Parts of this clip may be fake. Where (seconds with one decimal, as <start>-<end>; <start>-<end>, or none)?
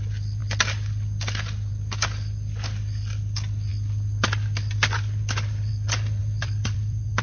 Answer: 6.2-7.2